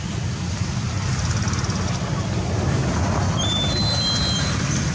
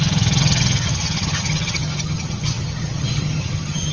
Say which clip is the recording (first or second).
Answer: first